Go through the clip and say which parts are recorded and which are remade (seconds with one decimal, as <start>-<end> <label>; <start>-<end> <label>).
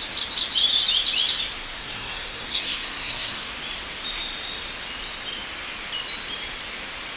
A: 0.0-1.8 recorded; 1.8-3.5 remade; 3.5-7.2 recorded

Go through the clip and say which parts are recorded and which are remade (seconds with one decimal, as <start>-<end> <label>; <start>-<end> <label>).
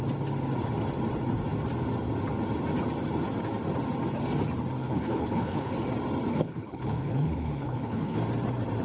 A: 0.0-4.8 recorded; 4.8-5.7 remade; 5.7-6.3 recorded; 6.3-8.2 remade; 8.2-8.8 recorded